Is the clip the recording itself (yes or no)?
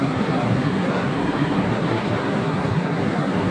no